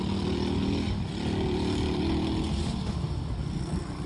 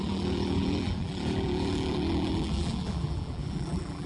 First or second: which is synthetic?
second